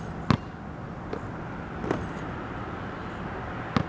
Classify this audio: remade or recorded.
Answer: recorded